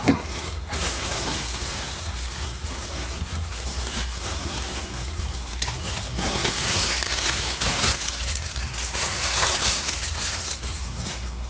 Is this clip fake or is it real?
fake